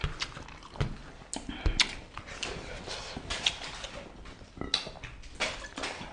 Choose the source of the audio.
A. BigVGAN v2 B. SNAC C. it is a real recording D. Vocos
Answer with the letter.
C